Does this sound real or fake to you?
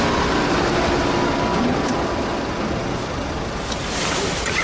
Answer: real